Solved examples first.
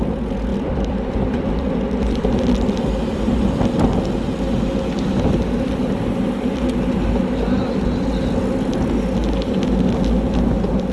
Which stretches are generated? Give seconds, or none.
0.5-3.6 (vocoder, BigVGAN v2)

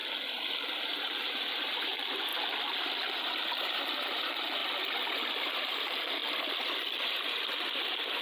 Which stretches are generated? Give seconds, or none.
0.7-2.3 (vocoder, BigVGAN v2); 3.2-4.6; 5.3-6.2; 7.0-8.2

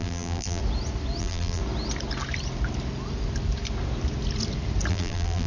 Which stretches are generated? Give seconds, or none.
0.0-0.6 (vocoder, BigVGAN v2); 1.2-1.6; 4.9-5.5

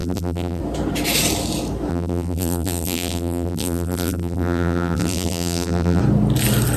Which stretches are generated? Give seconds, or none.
0.0-0.6 (vocoder, BigVGAN v2); 1.9-6.0

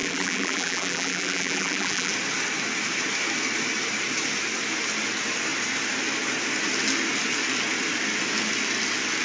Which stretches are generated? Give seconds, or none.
0.0-2.1 (vocoder, BigVGAN v2)

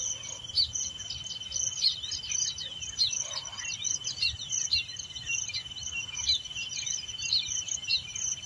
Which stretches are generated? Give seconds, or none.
none